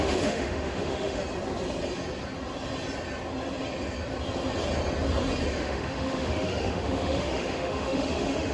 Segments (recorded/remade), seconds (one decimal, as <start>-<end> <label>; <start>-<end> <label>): 0.0-1.2 remade; 1.2-5.6 recorded; 5.6-8.5 remade